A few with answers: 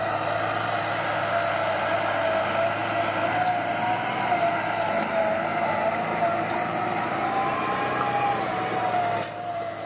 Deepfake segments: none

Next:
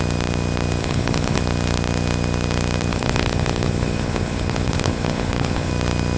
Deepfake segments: 0.8-1.4 (codec, HILCodec); 2.9-5.7

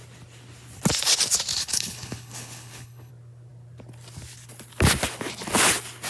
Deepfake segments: 1.5-3.1 (codec, HILCodec)

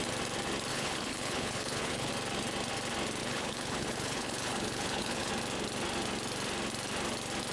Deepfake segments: 0.7-2.1 (codec, HILCodec); 3.2-5.3